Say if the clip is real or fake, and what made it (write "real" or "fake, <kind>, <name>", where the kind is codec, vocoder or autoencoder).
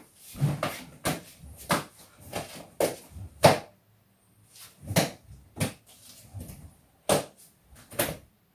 real